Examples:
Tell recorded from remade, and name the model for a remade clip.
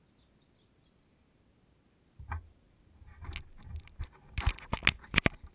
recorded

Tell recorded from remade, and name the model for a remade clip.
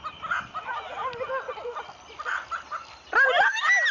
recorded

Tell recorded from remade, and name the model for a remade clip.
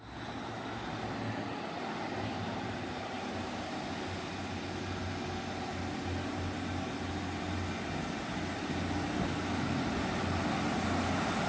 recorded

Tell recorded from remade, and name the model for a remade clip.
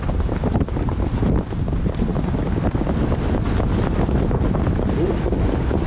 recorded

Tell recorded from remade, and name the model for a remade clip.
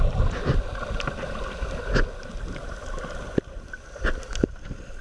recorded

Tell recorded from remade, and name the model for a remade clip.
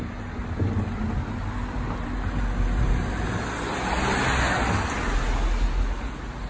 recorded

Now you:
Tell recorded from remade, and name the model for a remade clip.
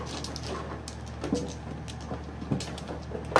recorded